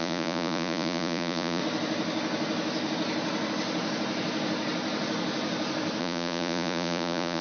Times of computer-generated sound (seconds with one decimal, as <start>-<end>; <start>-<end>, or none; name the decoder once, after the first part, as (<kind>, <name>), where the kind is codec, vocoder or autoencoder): 0.0-1.6 (vocoder, Vocos); 6.0-7.4